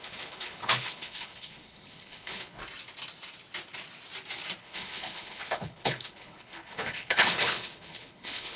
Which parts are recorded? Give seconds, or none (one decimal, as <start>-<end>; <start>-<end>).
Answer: 2.6-4.6